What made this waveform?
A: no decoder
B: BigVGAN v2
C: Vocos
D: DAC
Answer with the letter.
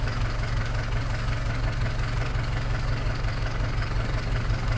D